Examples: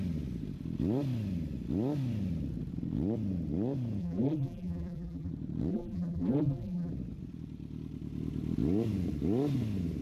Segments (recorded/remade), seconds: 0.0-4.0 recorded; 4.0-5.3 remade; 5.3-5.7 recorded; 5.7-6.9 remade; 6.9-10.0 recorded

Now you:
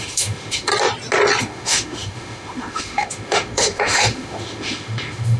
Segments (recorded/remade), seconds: 0.0-0.7 remade; 0.7-1.4 recorded; 1.4-5.4 remade

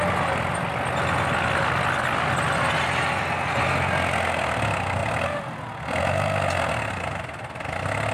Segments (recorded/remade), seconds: 0.0-8.1 recorded

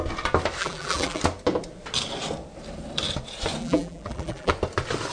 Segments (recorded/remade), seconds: 0.0-0.6 recorded; 0.6-1.2 remade; 1.2-3.6 recorded; 3.6-4.5 remade; 4.5-5.1 recorded